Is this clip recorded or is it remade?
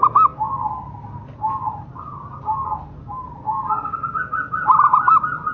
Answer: recorded